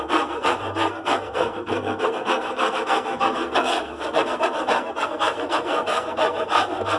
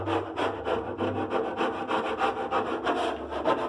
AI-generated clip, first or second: first